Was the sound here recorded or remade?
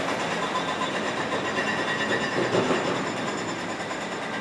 recorded